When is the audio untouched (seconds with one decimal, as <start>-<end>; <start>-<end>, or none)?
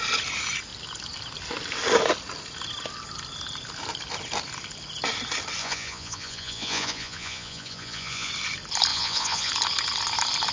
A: 0.0-5.6; 8.3-8.9; 9.5-10.5